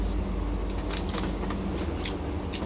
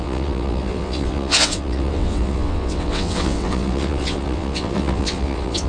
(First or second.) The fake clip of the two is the second